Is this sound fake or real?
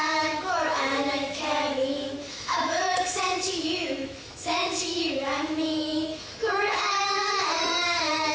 fake